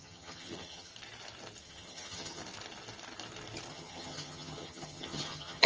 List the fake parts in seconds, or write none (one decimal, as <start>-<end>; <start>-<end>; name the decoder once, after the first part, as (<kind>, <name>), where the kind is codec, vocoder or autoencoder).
0.0-0.9 (vocoder, HiFi-GAN); 1.6-2.4; 3.7-5.7